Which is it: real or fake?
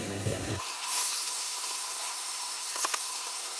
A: fake